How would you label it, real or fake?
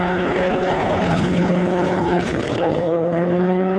fake